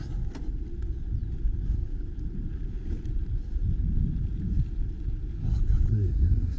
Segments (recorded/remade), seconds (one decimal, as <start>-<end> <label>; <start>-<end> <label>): 0.0-5.9 recorded; 5.9-6.6 remade